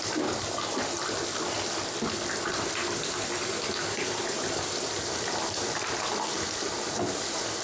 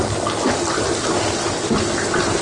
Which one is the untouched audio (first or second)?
second